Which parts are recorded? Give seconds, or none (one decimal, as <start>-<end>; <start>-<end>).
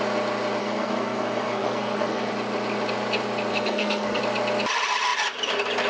0.0-0.6; 2.3-3.5; 4.2-5.9